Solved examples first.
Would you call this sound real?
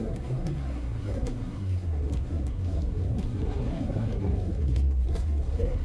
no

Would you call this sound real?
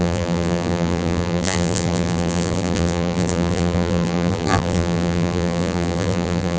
no